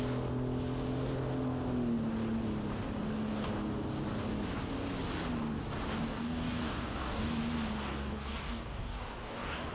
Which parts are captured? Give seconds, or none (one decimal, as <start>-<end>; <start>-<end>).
0.0-6.1; 7.4-7.9